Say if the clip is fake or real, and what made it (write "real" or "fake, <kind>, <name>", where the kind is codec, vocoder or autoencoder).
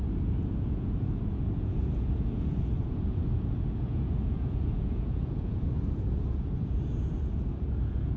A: fake, vocoder, Vocos